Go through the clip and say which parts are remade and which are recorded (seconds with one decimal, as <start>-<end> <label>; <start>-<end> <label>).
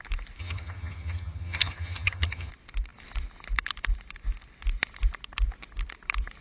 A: 0.0-0.4 recorded; 0.4-2.5 remade; 2.5-6.4 recorded